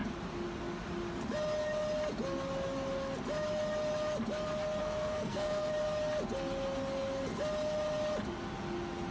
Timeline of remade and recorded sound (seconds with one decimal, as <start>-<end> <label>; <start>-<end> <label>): 0.0-4.8 recorded; 4.8-5.7 remade; 5.7-9.1 recorded